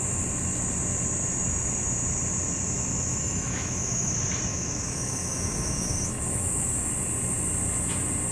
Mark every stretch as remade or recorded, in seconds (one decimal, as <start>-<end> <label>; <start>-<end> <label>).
0.0-3.1 recorded; 3.1-4.1 remade; 4.1-4.5 recorded; 4.5-6.9 remade; 6.9-8.3 recorded

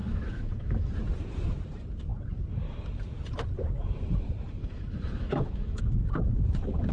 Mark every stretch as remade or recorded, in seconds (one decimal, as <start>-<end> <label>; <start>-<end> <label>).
0.0-0.9 remade; 0.9-4.6 recorded; 4.6-5.8 remade; 5.8-6.9 recorded

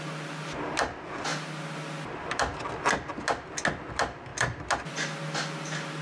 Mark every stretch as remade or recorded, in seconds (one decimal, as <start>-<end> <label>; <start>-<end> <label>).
0.0-6.0 recorded